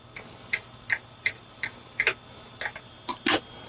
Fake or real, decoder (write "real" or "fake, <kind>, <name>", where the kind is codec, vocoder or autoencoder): real